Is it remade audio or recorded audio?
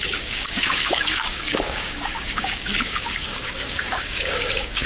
remade